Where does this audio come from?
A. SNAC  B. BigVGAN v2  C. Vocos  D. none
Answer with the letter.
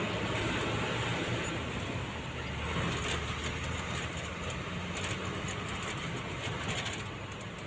D